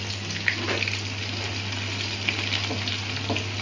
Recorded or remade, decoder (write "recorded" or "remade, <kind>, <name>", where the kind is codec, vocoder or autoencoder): recorded